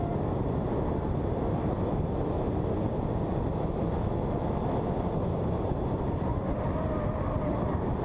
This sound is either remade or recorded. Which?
recorded